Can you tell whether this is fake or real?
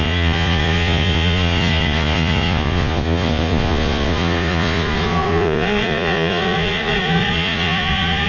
fake